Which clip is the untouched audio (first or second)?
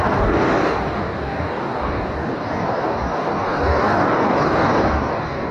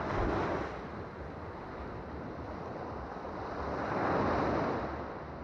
second